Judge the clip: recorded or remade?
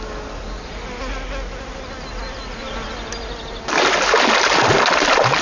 recorded